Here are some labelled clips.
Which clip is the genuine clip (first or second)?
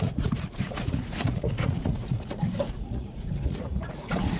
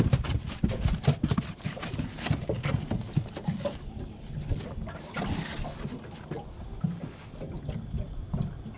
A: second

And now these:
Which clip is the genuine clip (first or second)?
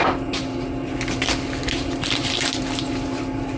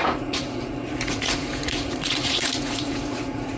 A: first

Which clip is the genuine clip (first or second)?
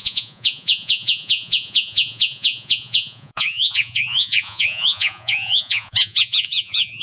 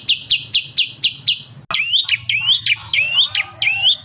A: second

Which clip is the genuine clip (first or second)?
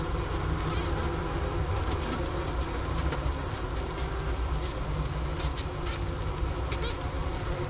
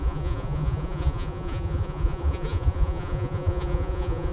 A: first